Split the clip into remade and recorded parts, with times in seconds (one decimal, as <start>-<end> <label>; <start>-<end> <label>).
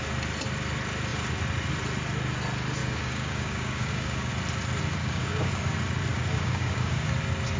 0.0-2.8 recorded; 2.8-4.3 remade; 4.3-5.0 recorded; 5.0-5.5 remade; 5.5-6.1 recorded; 6.1-7.1 remade; 7.1-7.6 recorded